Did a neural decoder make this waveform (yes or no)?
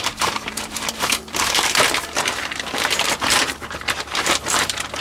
yes